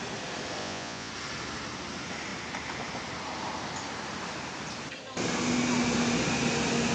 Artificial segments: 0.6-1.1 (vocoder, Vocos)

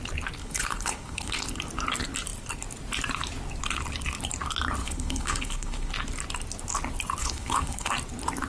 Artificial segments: 0.4-1.3 (codec, HILCodec); 4.8-5.9; 7.2-7.9

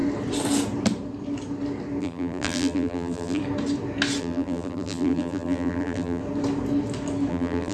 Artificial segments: 2.0-3.4 (vocoder, BigVGAN v2); 4.2-6.2; 7.3-7.7

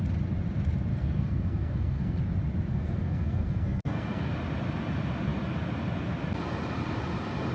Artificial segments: 0.9-2.2 (codec, SNAC); 2.7-4.3

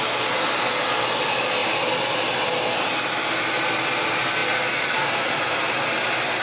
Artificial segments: none

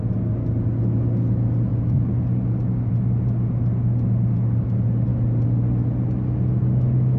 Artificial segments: none

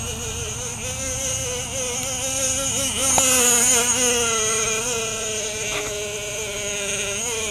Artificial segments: none

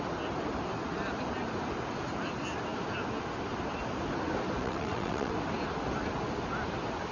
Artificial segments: 4.6-5.3 (vocoder, WaveNeXt)